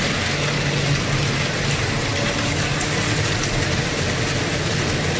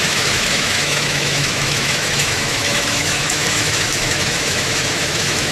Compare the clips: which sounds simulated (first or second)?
second